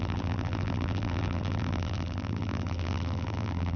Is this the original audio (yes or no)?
no